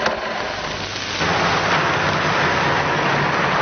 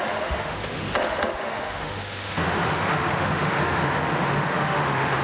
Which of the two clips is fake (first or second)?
second